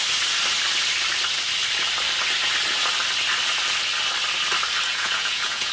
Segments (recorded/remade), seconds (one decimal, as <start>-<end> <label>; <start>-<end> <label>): 0.0-4.9 recorded; 4.9-5.7 remade